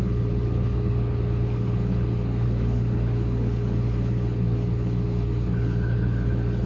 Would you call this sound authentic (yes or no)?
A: no